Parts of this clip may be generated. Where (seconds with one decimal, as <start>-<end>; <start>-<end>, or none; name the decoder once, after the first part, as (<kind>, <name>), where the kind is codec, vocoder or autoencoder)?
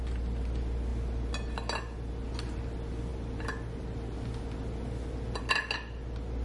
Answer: none